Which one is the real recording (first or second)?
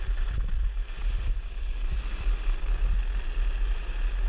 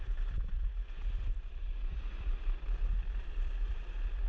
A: first